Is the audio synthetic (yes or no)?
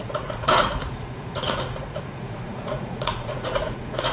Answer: yes